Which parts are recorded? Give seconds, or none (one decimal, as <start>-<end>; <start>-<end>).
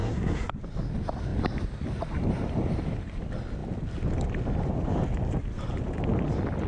0.6-6.7